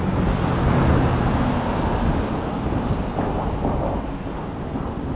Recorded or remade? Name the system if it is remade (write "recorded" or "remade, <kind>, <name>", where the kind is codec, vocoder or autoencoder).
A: recorded